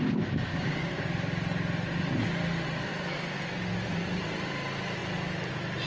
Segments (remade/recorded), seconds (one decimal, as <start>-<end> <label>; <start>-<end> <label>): 0.0-0.5 recorded; 0.5-1.0 remade; 1.0-5.9 recorded

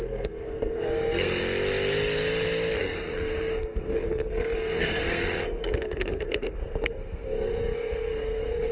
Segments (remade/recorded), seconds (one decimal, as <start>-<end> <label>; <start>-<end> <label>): 0.0-1.4 remade; 1.4-2.8 recorded; 2.8-8.7 remade

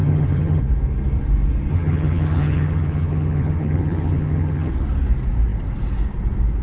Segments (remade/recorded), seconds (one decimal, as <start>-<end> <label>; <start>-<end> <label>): 0.0-0.6 remade; 0.6-1.7 recorded; 1.7-4.7 remade; 4.7-6.6 recorded

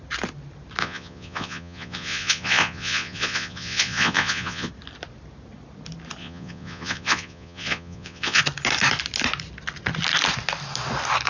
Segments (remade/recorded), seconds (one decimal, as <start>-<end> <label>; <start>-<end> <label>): 0.0-0.8 recorded; 0.8-4.7 remade; 4.7-6.2 recorded; 6.2-8.4 remade; 8.4-11.3 recorded